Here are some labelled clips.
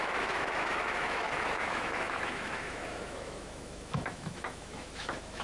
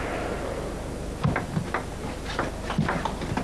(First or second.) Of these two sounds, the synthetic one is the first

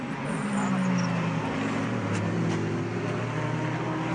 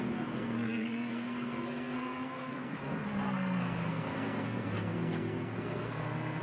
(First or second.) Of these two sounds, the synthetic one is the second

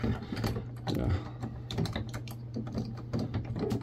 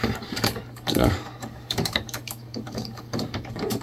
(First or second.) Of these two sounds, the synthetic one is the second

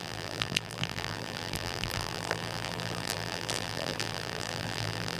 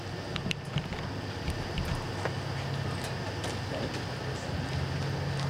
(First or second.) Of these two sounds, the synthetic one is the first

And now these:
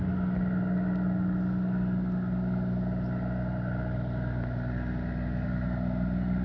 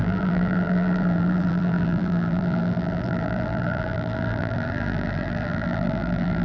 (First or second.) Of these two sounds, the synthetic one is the second